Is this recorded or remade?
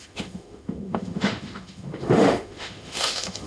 remade